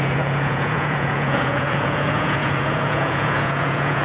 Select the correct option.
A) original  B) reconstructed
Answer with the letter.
B